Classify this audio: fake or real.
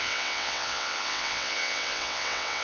fake